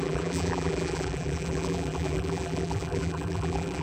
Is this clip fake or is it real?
fake